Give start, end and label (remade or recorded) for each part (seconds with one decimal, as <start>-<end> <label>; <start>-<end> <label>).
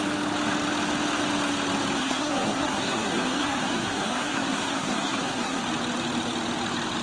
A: 0.0-2.0 recorded; 2.0-5.6 remade; 5.6-7.0 recorded